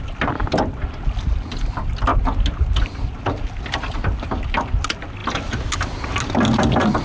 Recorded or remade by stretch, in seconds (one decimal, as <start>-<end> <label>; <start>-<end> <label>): 0.0-7.0 recorded